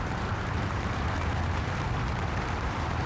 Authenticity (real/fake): fake